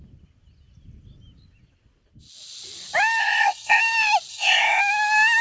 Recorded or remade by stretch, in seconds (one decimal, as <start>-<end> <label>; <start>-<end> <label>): 0.0-3.2 recorded; 3.2-3.8 remade; 3.8-4.3 recorded; 4.3-4.8 remade; 4.8-5.4 recorded